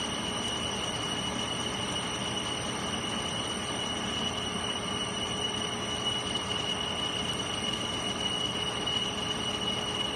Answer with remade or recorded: recorded